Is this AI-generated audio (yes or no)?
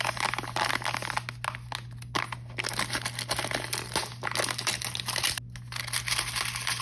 no